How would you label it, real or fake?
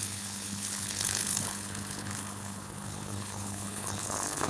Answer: fake